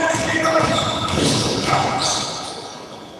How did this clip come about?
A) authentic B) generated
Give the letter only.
B